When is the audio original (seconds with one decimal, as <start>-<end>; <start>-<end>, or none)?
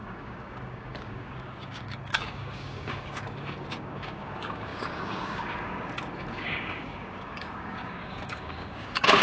none